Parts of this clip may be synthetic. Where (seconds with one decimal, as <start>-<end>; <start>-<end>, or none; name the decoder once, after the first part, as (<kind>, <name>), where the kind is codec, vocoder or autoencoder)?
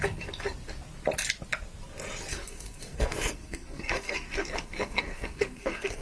2.3-6.0 (codec, SNAC)